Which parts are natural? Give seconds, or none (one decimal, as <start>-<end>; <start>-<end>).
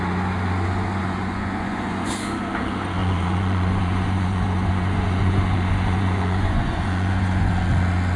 0.0-1.0; 2.1-3.0; 7.5-8.2